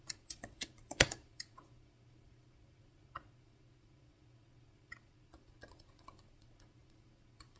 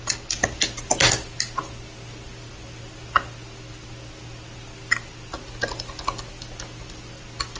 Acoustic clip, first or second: second